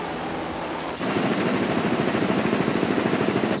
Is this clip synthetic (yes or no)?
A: no